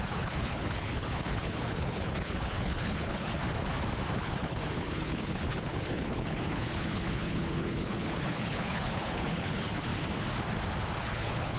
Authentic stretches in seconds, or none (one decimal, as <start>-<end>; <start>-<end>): 3.4-4.2; 9.9-11.0